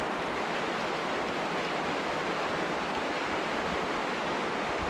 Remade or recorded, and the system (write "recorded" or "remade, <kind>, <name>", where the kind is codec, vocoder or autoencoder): recorded